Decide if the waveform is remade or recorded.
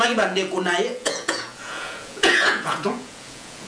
remade